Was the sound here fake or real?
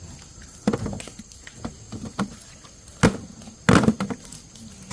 real